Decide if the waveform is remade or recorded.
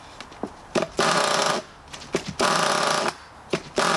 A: recorded